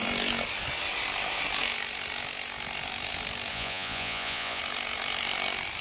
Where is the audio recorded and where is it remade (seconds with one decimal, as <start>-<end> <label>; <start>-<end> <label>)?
0.0-3.5 recorded; 3.5-4.6 remade; 4.6-5.8 recorded